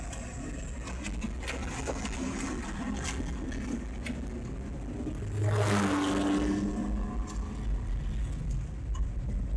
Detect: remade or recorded recorded